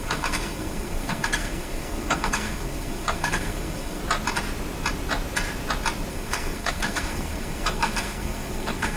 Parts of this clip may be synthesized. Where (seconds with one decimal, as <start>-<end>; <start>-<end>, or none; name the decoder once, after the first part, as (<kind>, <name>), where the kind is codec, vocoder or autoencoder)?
0.0-4.0 (codec, SNAC); 6.1-9.0